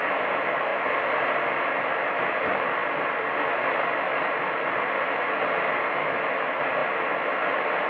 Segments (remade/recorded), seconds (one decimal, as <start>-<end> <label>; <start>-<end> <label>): 0.0-7.9 recorded